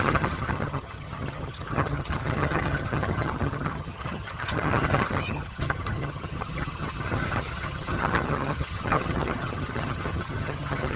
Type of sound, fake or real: fake